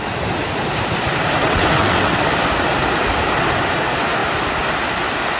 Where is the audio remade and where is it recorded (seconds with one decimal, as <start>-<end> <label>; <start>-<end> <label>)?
0.0-1.4 recorded; 1.4-2.2 remade; 2.2-5.4 recorded